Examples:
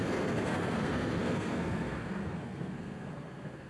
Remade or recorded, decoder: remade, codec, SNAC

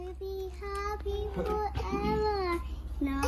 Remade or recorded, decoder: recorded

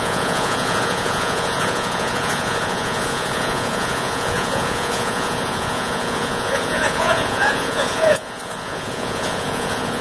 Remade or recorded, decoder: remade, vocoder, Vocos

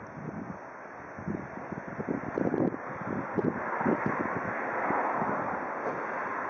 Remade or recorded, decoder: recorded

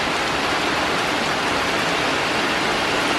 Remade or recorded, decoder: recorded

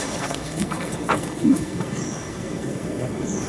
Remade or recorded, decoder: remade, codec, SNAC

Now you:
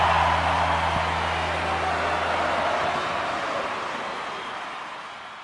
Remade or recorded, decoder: recorded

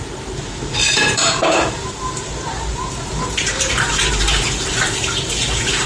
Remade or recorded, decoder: remade, vocoder, BigVGAN v2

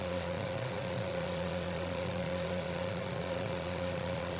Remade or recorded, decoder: remade, vocoder, Vocos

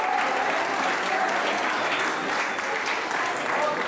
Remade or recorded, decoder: recorded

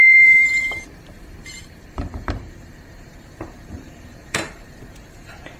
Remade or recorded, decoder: remade, vocoder, BigVGAN v2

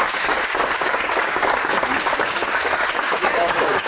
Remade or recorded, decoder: remade, codec, DAC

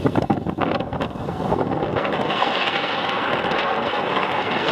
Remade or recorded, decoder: remade, codec, SNAC